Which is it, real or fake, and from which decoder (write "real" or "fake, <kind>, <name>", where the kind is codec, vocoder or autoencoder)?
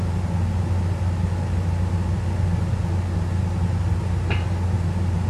real